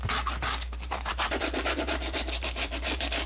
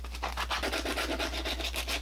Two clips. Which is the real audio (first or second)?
second